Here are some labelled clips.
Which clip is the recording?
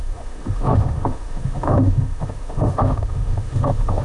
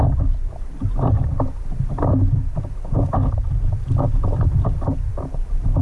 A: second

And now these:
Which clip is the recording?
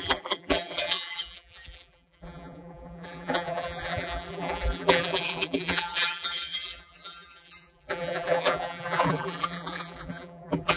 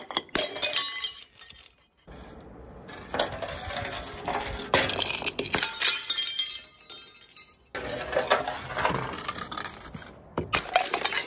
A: second